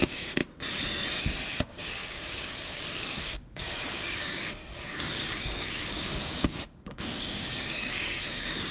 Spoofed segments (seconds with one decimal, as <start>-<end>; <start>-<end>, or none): 0.0-0.4; 1.6-8.7